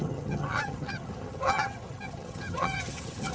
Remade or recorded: remade